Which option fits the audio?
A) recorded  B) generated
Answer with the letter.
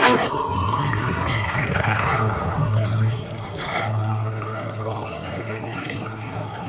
B